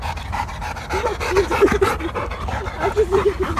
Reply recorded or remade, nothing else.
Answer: recorded